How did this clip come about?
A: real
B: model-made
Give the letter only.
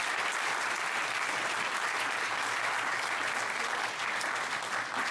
A